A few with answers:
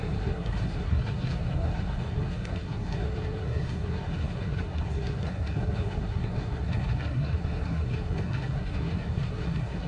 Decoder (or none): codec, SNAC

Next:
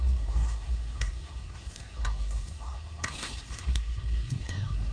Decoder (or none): codec, SNAC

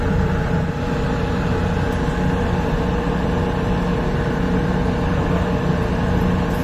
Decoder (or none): none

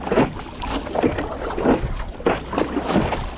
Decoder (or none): none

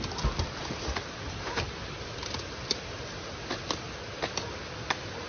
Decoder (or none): none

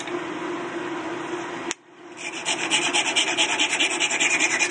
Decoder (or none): none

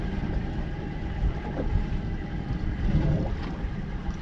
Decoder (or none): vocoder, BigVGAN v2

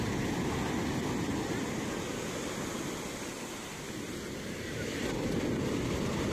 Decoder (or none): none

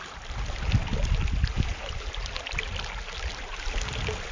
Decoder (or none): none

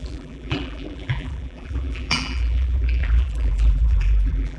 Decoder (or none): vocoder, BigVGAN v2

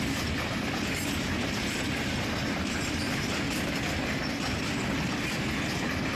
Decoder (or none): none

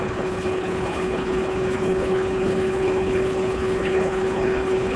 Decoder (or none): codec, HILCodec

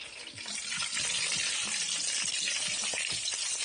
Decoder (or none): none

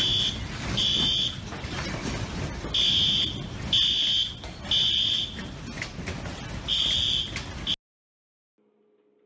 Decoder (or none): none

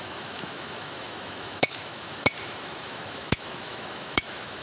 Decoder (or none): autoencoder, DAC-VAE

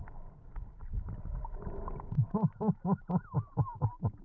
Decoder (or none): none